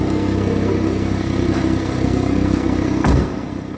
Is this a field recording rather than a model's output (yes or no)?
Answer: no